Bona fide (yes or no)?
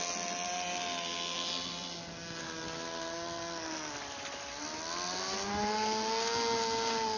yes